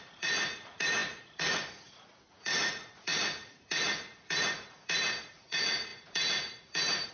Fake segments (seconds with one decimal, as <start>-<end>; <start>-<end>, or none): 0.0-7.1